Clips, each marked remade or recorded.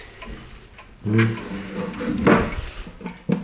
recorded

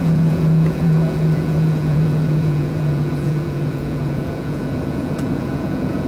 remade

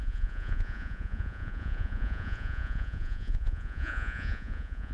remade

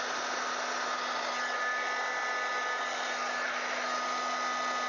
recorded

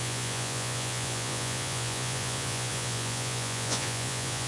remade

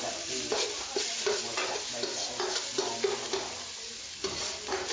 recorded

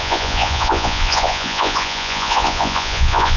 remade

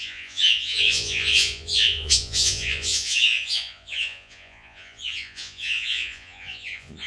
remade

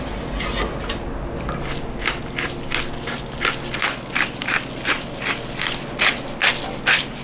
recorded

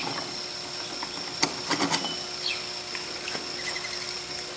recorded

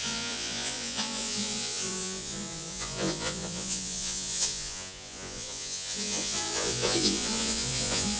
remade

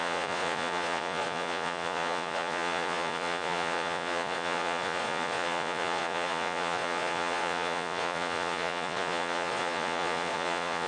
remade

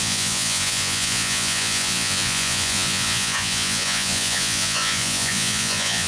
remade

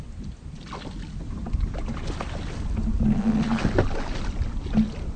recorded